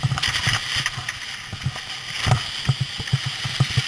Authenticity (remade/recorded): recorded